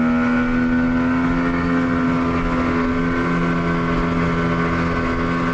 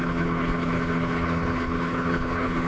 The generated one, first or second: second